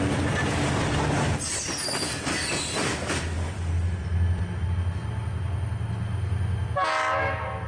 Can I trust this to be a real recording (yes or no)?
yes